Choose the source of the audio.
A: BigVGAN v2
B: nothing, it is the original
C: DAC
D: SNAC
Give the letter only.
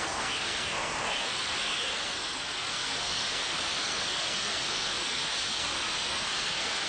D